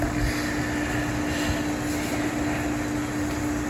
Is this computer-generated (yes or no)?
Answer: no